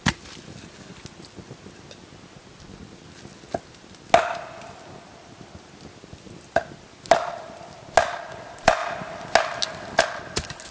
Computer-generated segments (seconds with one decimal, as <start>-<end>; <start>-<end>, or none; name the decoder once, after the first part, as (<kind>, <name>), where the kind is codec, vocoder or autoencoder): none